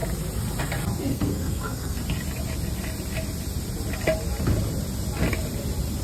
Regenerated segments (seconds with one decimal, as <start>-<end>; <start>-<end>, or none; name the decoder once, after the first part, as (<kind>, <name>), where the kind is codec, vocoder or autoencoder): 1.1-2.0 (codec, SNAC)

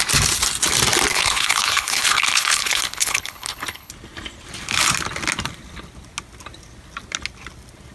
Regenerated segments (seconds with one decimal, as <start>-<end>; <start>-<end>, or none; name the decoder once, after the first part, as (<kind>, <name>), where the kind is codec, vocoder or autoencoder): 1.1-3.9 (codec, HILCodec)

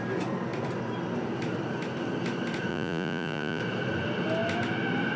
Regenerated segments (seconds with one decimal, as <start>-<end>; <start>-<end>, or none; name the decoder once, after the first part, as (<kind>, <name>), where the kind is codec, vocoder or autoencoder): 2.7-3.6 (vocoder, Vocos)

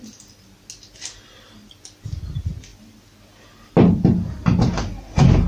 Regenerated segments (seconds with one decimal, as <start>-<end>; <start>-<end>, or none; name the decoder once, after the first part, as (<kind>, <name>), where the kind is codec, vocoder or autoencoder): none

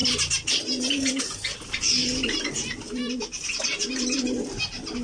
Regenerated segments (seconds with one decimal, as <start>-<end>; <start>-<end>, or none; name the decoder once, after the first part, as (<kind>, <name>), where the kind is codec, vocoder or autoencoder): none

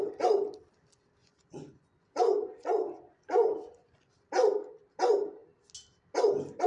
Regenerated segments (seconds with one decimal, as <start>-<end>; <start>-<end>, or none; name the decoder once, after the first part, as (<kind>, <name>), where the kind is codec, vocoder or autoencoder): 1.2-4.1 (vocoder, Vocos)

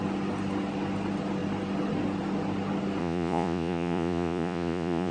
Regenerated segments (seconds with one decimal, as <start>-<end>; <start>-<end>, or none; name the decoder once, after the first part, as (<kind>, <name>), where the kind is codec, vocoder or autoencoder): 3.0-5.1 (vocoder, Vocos)

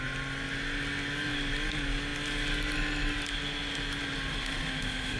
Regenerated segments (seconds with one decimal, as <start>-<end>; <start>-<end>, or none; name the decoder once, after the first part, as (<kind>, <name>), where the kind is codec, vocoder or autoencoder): 4.3-5.2 (autoencoder, DAC-VAE)